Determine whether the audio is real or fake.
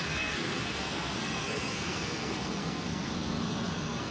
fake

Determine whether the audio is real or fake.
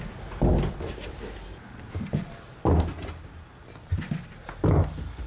real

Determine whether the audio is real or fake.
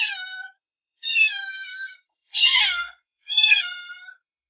fake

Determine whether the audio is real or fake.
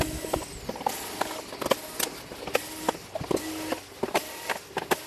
real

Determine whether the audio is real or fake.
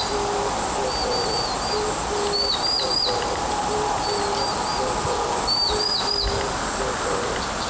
real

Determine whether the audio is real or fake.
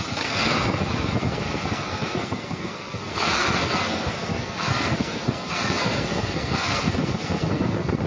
fake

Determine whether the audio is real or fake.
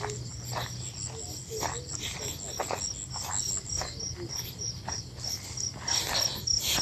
real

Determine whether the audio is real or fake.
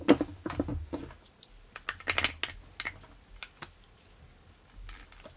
real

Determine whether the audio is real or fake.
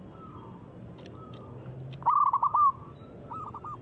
real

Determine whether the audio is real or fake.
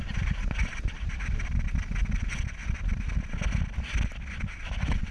real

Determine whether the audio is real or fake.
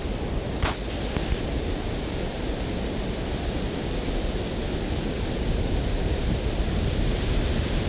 real